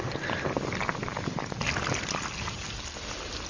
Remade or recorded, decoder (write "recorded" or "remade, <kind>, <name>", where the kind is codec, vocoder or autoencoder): recorded